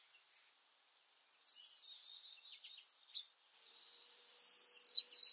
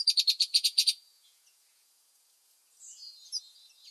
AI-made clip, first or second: second